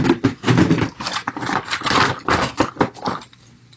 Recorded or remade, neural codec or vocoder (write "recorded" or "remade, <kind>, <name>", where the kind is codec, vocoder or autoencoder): recorded